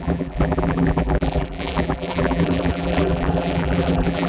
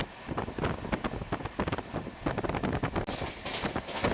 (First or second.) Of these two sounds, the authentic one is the second